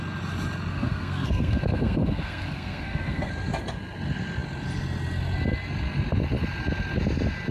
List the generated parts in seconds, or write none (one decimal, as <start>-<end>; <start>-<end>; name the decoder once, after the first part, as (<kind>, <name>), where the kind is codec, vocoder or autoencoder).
0.7-3.3 (codec, SNAC)